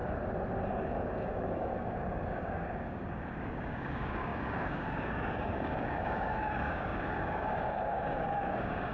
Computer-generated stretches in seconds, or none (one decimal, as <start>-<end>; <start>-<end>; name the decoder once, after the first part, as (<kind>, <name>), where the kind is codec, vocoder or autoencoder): 0.7-8.9 (codec, DAC)